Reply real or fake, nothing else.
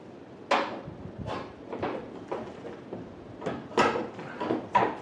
real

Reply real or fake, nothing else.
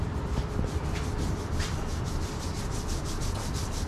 fake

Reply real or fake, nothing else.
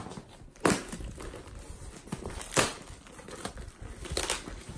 real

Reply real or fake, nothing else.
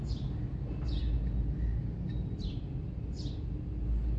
real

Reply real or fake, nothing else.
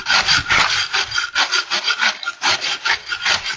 fake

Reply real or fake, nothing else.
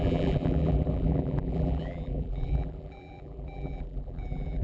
fake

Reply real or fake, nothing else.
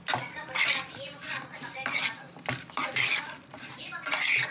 fake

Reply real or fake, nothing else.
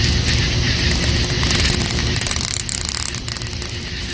real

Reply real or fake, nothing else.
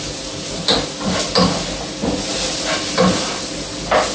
real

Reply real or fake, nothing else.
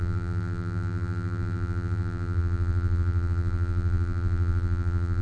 fake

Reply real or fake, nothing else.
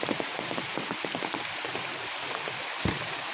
fake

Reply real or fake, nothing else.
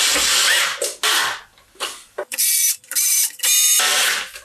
real